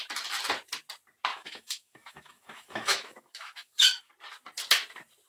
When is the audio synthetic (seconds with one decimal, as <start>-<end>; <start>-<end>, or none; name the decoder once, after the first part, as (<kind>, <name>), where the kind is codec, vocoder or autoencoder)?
1.3-4.1 (autoencoder, DAC-VAE)